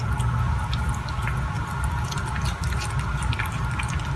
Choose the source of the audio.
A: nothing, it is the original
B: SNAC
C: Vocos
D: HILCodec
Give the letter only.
A